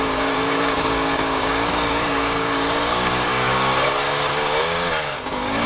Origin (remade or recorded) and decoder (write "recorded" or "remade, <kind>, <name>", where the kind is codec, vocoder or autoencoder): remade, codec, DAC